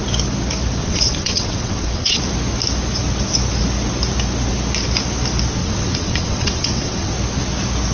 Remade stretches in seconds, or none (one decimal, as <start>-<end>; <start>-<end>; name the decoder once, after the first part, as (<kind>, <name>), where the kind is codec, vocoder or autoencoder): 0.8-2.2 (vocoder, WaveNeXt); 5.6-7.1